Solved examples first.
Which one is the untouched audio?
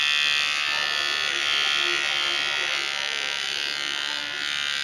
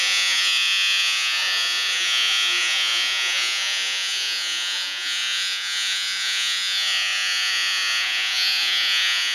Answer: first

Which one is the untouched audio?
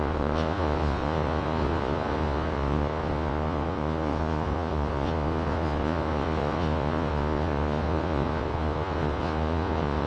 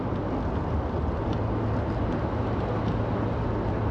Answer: second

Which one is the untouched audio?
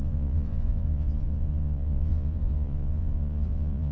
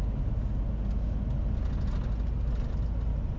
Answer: second